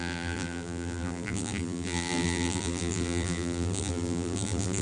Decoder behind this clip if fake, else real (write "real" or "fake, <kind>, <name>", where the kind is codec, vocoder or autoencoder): fake, vocoder, BigVGAN v2